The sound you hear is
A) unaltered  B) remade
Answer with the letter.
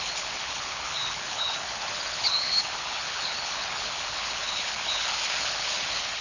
B